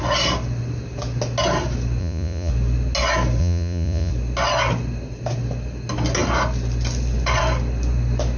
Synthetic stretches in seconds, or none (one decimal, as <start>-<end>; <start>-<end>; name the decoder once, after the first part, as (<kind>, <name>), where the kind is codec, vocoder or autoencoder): 2.0-2.5 (vocoder, Vocos); 3.4-4.1

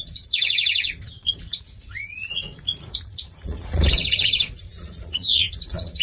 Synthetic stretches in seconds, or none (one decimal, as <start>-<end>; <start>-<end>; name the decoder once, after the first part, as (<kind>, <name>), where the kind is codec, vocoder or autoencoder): 0.0-6.0 (vocoder, Vocos)

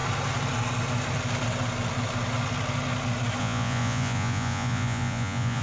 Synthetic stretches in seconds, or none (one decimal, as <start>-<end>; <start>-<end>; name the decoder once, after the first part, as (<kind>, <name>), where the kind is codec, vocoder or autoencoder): 3.4-5.6 (vocoder, Vocos)

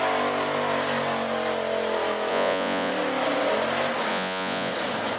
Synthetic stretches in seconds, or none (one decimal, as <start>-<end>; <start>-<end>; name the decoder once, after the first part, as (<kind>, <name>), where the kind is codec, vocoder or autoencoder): 2.3-2.9 (vocoder, Vocos); 4.1-4.7

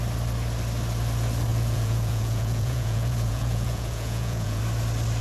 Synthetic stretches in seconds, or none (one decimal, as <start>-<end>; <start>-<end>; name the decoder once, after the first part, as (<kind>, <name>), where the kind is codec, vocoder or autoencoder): 1.5-4.6 (vocoder, Vocos)

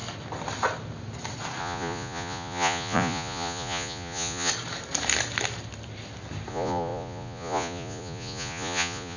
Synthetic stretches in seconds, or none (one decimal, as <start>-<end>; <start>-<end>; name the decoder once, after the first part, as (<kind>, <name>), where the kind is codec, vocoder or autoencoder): 1.6-4.5 (vocoder, Vocos); 6.5-9.2

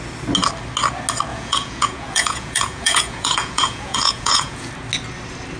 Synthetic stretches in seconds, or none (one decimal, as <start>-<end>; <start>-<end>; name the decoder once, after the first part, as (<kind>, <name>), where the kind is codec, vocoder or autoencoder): 1.3-4.7 (vocoder, Vocos)

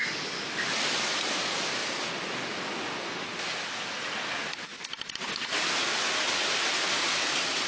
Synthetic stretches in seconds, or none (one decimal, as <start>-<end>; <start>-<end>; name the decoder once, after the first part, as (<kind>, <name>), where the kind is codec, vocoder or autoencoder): none